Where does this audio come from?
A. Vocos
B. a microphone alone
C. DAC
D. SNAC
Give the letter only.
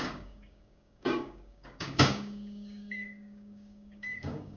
C